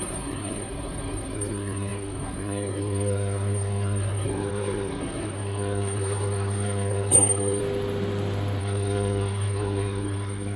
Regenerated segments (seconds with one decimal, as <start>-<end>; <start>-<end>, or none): 0.0-7.6; 8.6-10.6